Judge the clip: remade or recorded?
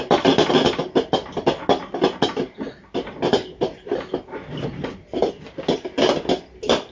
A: recorded